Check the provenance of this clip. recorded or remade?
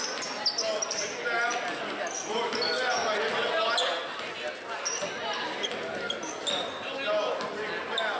recorded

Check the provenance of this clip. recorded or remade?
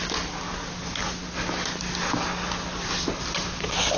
recorded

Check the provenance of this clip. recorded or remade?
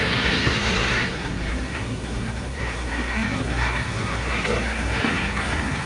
remade